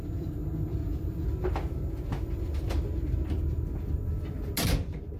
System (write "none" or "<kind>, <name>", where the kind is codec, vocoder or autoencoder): none